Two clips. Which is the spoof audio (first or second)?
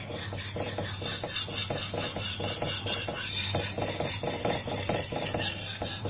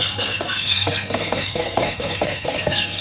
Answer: second